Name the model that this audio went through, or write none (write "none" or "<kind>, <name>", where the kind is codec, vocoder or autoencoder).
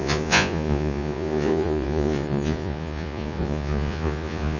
vocoder, Vocos